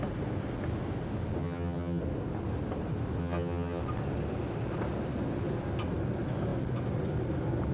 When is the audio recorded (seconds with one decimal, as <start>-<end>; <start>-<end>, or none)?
0.0-1.4; 2.0-3.2; 3.8-7.7